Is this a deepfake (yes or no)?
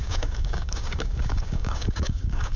yes